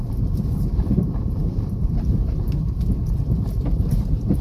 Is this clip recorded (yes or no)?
no